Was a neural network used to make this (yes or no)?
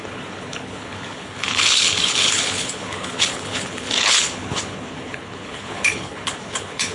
yes